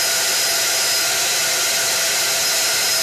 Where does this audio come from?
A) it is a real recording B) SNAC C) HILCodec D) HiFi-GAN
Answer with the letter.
A